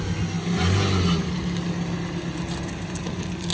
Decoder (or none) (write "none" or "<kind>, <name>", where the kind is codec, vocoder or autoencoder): none